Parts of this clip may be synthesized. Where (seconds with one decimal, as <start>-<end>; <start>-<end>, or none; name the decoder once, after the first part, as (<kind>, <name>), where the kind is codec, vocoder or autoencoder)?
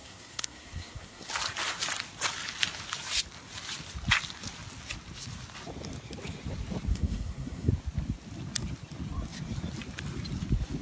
0.0-1.3 (codec, SNAC); 6.9-7.7